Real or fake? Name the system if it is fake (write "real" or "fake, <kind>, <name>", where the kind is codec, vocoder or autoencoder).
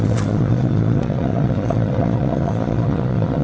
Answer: fake, vocoder, Vocos